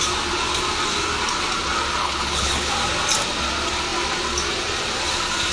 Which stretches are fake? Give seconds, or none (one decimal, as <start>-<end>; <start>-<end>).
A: 2.0-2.7